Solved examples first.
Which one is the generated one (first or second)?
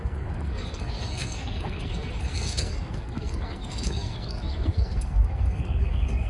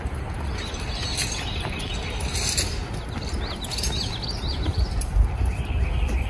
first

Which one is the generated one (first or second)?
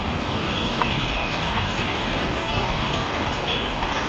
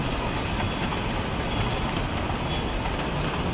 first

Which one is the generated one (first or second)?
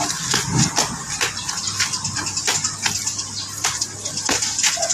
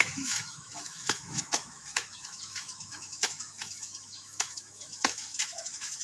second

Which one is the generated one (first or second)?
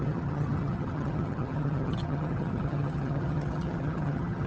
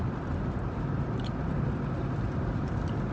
first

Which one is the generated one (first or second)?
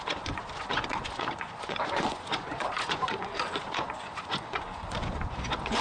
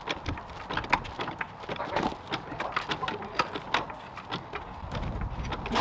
first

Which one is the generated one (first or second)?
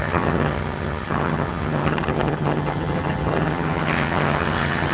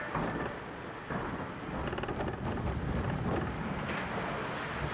first